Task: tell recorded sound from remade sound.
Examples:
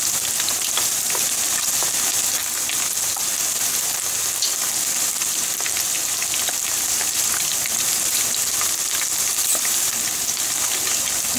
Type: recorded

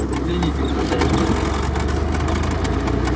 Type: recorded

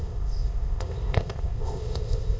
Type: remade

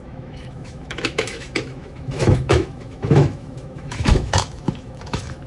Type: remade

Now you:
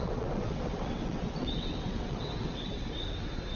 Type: remade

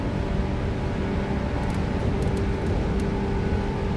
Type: recorded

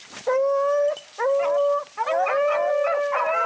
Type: recorded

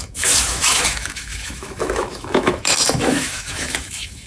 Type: remade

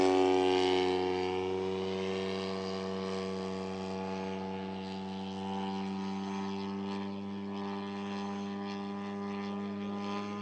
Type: recorded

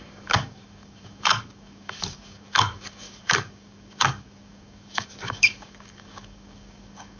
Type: remade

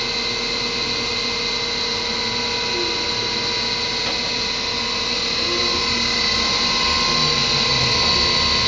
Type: recorded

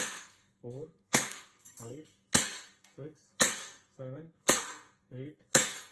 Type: remade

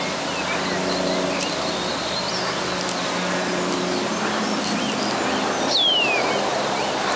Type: recorded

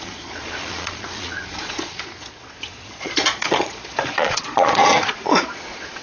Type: remade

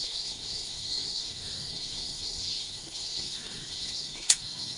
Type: remade